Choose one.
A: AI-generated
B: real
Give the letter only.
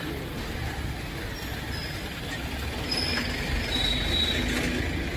B